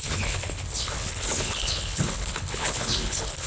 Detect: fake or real fake